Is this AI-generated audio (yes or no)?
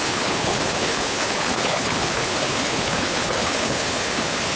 yes